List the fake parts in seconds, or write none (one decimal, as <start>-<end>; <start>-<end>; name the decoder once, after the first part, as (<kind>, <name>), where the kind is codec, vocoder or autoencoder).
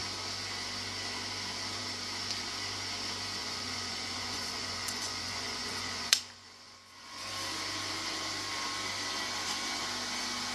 3.4-7.3 (vocoder, Vocos)